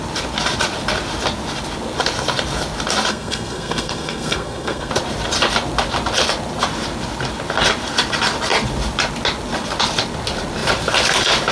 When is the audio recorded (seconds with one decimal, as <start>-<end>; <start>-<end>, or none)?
0.0-3.1; 4.9-11.5